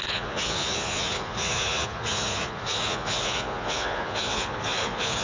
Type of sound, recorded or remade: remade